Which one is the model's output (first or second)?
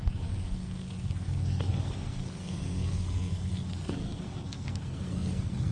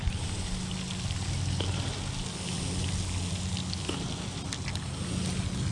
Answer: first